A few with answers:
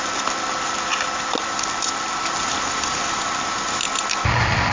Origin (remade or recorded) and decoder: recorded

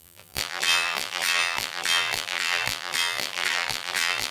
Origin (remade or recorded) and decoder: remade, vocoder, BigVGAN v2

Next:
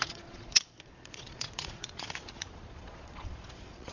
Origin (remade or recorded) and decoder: remade, vocoder, Vocos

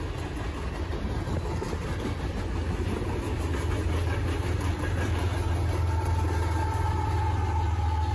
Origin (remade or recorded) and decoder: recorded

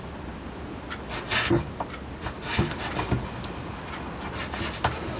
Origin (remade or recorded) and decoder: recorded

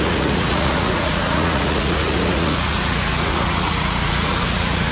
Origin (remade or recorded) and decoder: remade, vocoder, Vocos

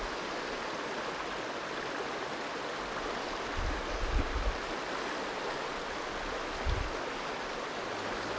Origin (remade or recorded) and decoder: recorded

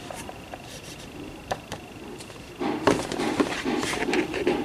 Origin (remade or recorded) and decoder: remade, vocoder, BigVGAN v2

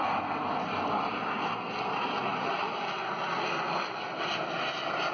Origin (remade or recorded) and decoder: recorded